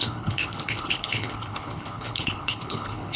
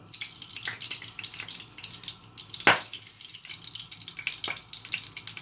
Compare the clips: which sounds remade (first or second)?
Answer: first